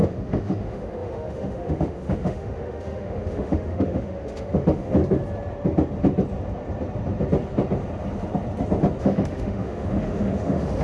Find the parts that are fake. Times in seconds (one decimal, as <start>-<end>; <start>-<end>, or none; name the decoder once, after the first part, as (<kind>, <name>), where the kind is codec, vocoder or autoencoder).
0.0-5.0 (autoencoder, DAC-VAE); 9.0-10.8